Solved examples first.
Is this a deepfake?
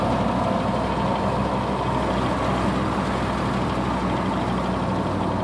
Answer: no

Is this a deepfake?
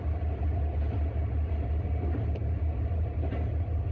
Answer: no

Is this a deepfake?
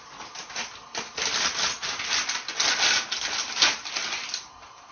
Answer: no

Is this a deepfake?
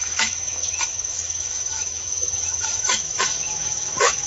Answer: yes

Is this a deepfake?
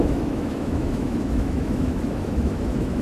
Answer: yes